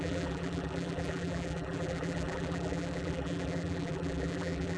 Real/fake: fake